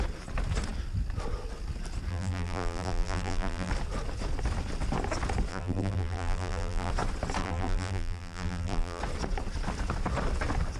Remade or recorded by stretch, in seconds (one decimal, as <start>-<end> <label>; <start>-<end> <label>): 0.0-2.1 recorded; 2.1-3.7 remade; 3.7-5.5 recorded; 5.5-6.9 remade; 6.9-7.4 recorded; 7.4-9.0 remade; 9.0-10.8 recorded